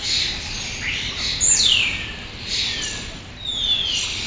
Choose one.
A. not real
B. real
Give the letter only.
B